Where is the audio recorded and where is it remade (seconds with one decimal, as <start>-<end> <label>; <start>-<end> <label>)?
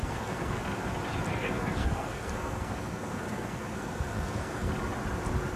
0.0-0.6 remade; 0.6-1.3 recorded; 1.3-4.7 remade; 4.7-5.6 recorded